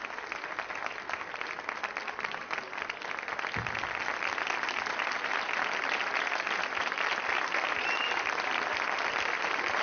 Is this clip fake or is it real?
real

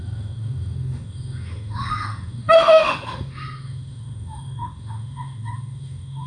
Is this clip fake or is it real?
fake